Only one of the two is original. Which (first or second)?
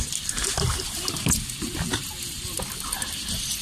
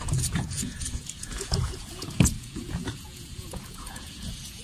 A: first